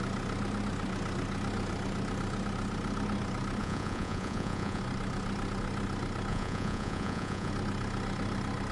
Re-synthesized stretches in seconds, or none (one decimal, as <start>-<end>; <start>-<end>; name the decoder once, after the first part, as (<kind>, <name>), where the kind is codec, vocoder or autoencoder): 3.6-4.8 (vocoder, Vocos); 6.3-7.5